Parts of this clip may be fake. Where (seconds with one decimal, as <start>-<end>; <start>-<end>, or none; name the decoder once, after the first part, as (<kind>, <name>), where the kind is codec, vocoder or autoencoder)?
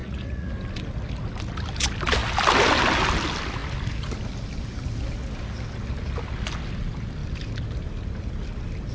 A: 0.0-0.5 (vocoder, Vocos)